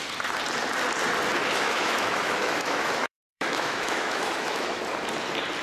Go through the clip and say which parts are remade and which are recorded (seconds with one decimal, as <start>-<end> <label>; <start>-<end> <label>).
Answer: 0.0-1.4 recorded; 1.4-4.8 remade; 4.8-5.6 recorded